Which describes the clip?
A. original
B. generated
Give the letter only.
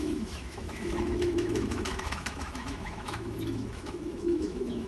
B